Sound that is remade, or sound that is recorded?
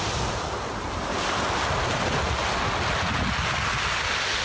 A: recorded